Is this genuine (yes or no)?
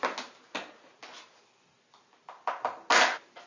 yes